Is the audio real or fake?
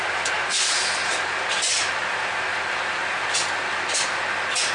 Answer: real